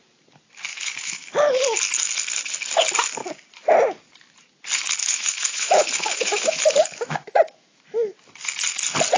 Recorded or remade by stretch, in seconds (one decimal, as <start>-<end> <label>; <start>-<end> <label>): 0.0-0.7 recorded; 0.7-1.3 remade; 1.3-5.0 recorded; 5.0-7.8 remade; 7.8-9.2 recorded